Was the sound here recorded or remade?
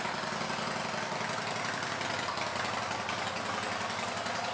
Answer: recorded